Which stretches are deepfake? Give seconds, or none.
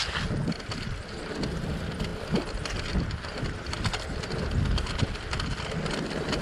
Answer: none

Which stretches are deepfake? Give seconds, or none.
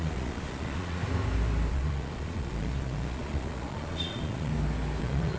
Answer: 0.0-1.0 (vocoder, Vocos); 1.7-4.5; 5.0-5.4